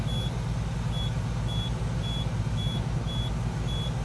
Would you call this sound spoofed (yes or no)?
no